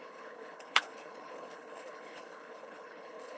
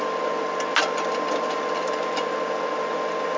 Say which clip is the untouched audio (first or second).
second